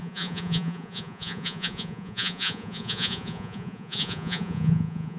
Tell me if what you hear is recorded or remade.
remade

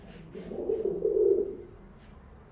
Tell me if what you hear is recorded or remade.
recorded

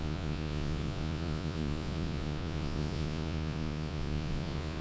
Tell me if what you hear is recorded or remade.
remade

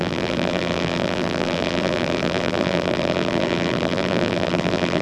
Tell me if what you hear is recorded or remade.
remade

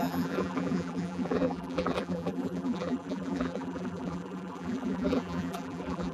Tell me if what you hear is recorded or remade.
remade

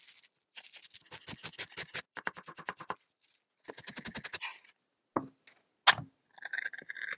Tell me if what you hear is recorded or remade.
recorded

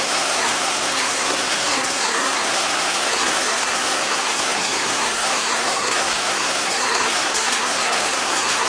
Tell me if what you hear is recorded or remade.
remade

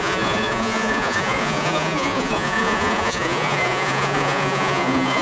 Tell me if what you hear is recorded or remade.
remade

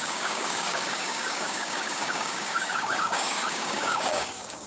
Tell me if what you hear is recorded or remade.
remade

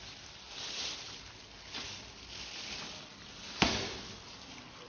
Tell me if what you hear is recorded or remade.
recorded